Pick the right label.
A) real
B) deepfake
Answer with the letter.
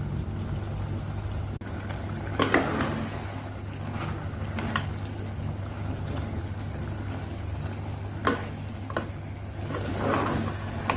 A